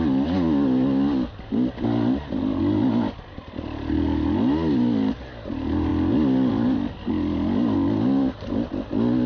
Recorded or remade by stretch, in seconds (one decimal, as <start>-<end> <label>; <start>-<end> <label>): 0.0-9.3 recorded